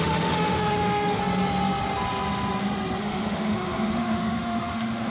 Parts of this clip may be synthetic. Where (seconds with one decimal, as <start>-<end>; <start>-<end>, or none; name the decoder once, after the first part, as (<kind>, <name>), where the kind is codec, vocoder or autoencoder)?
0.0-1.2 (autoencoder, DAC-VAE); 3.0-5.1